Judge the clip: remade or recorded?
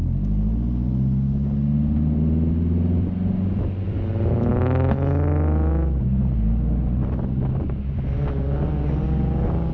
recorded